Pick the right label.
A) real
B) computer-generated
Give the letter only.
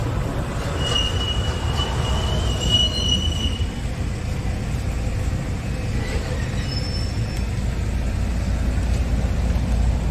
A